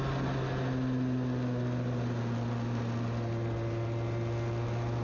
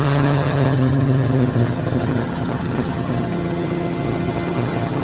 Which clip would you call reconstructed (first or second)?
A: second